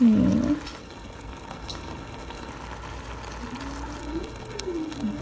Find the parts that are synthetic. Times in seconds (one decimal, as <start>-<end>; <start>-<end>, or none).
0.8-2.5; 4.0-5.2